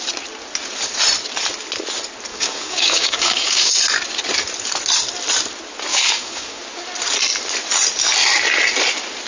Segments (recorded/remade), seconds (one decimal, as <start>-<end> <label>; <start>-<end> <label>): 0.0-2.3 recorded; 2.3-3.7 remade; 3.7-5.9 recorded; 5.9-6.6 remade; 6.6-9.3 recorded